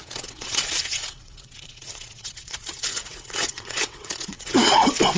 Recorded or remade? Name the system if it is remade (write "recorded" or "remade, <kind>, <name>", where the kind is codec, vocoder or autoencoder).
remade, vocoder, WaveNeXt